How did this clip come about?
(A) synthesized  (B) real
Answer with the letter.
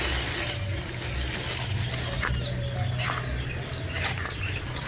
B